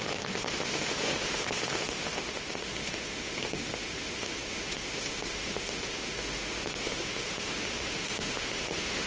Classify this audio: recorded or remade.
remade